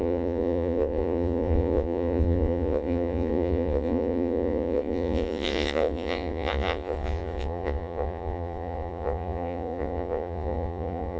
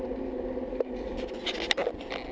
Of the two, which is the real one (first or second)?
second